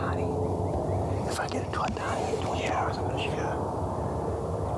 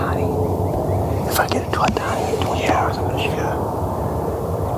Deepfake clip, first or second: second